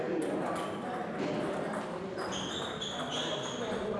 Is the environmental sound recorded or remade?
recorded